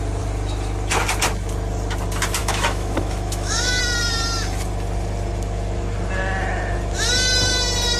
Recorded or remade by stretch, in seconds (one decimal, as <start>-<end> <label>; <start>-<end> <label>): 0.0-2.4 recorded; 2.4-3.8 remade; 3.8-8.0 recorded